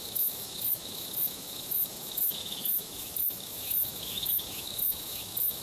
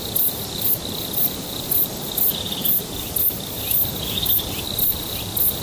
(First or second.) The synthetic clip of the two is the first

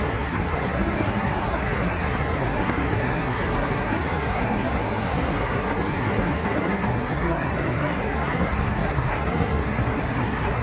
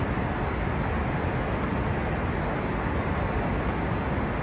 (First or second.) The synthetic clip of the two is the first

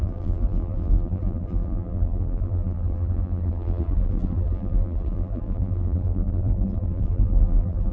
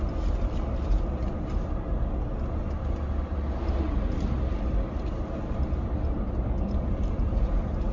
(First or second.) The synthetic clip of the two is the first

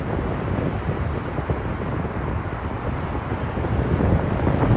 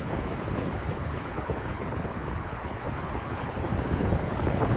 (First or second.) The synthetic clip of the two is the second